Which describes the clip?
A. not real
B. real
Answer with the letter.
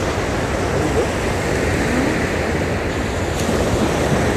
B